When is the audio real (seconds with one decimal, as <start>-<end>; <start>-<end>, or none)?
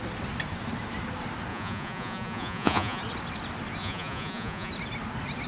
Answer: 0.0-1.5; 3.0-3.8; 4.7-5.5